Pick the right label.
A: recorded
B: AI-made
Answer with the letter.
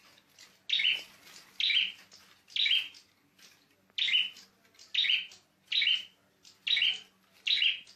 A